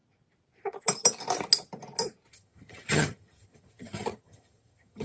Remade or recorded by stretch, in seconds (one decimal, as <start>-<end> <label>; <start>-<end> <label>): 0.0-2.3 recorded; 2.3-5.0 remade

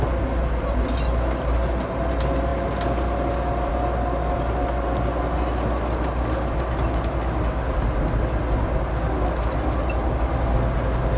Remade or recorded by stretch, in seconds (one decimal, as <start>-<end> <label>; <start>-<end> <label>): 0.0-11.2 recorded

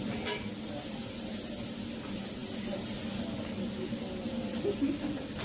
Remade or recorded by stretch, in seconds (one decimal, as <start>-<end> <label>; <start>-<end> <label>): 0.0-5.4 recorded

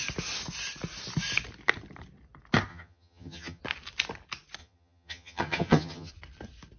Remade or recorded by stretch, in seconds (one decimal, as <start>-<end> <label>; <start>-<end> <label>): 0.0-2.7 recorded; 2.7-3.6 remade; 3.6-4.6 recorded; 4.6-6.1 remade; 6.1-6.8 recorded

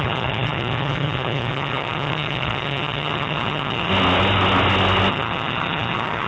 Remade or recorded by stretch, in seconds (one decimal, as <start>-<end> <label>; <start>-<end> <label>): 0.0-3.9 remade; 3.9-5.1 recorded; 5.1-6.3 remade

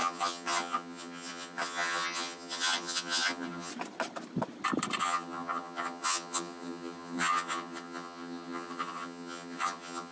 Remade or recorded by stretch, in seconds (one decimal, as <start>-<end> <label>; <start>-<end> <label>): 0.0-3.7 remade; 3.7-5.0 recorded; 5.0-10.1 remade